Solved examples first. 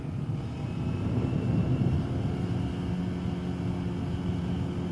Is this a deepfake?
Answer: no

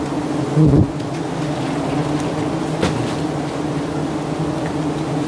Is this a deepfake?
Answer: no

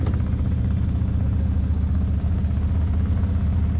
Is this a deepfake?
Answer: no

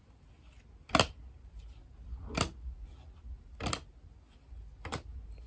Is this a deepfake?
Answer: no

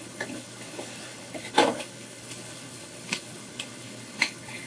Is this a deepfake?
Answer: yes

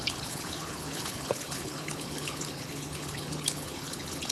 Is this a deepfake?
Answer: yes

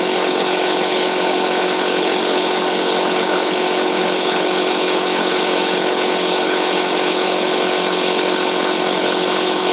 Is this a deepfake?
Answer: yes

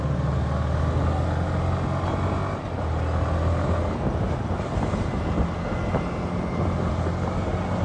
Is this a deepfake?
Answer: no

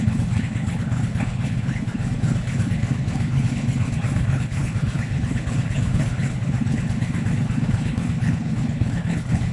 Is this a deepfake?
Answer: yes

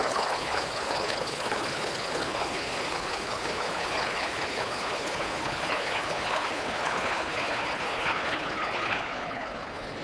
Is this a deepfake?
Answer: yes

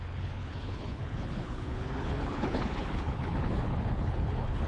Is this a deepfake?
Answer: yes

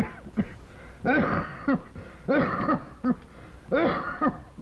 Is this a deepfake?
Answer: no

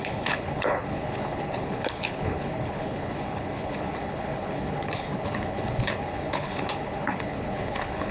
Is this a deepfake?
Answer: yes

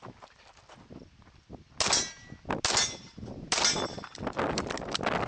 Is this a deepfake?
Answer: no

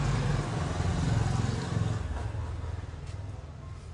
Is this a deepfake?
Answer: no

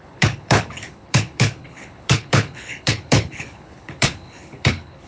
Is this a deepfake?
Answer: yes